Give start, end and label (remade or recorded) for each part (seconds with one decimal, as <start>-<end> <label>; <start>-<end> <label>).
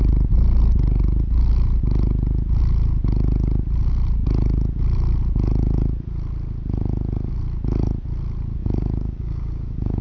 0.0-8.6 recorded; 8.6-10.0 remade